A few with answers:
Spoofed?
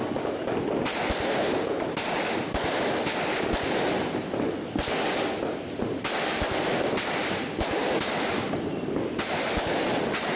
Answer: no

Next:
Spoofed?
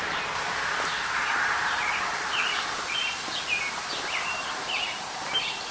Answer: yes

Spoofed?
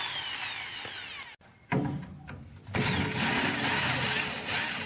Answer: no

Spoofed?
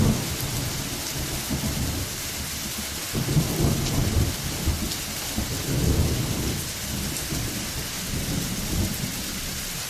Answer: no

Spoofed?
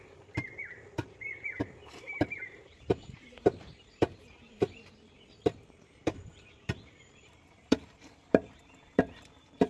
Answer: yes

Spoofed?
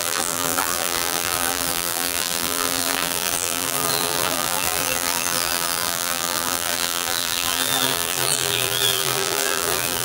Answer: yes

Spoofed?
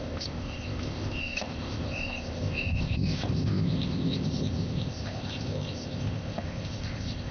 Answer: yes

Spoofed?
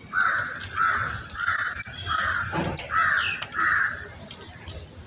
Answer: no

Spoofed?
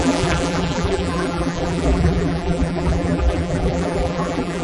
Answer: yes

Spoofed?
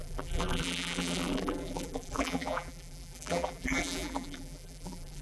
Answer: yes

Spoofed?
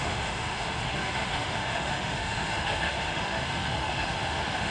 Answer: yes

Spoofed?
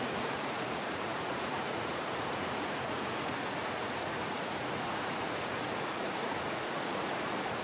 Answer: yes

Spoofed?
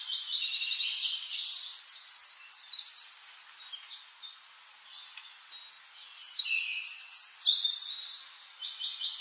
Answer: no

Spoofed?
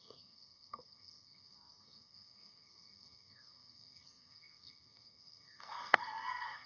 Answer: yes